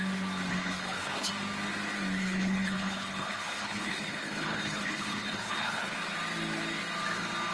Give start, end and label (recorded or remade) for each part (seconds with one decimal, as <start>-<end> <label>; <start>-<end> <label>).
0.0-0.5 recorded; 0.5-1.3 remade; 1.3-2.2 recorded; 2.2-6.0 remade; 6.0-7.5 recorded